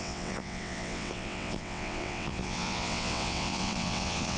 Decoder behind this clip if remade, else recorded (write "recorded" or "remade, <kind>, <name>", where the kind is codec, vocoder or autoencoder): remade, vocoder, WaveNeXt